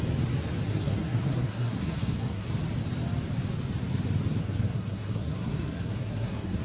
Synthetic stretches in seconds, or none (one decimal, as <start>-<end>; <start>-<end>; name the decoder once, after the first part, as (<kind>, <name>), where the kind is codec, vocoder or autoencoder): 0.7-2.5 (codec, SNAC); 4.4-6.6